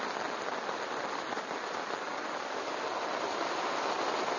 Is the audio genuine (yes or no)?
yes